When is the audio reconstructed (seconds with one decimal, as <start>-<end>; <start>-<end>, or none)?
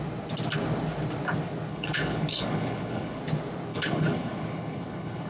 1.7-3.2; 3.7-5.3